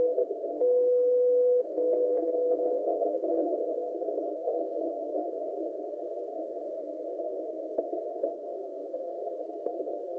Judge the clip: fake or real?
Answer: fake